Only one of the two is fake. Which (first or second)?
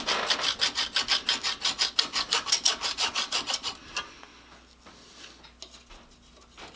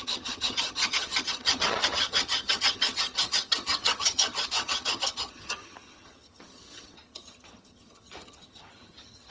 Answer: second